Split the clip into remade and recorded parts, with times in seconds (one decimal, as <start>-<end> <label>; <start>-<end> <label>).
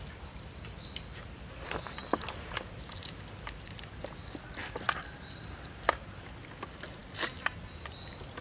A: 0.0-8.4 recorded